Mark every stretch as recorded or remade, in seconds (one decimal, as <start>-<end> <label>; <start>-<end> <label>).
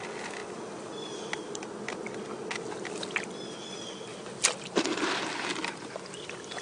0.0-6.6 recorded